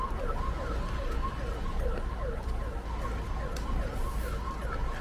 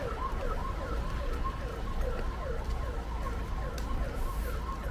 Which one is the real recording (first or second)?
first